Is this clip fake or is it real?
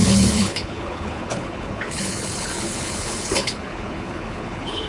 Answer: fake